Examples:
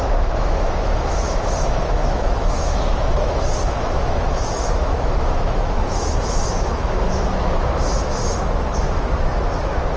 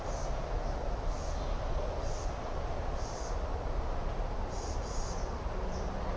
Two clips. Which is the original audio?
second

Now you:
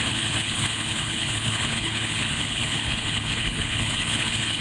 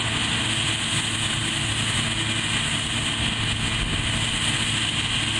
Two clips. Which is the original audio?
second